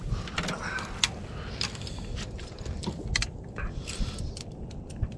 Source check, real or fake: real